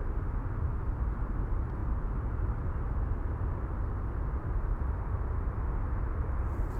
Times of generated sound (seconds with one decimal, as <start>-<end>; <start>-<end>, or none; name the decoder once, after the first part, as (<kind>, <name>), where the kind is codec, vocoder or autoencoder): none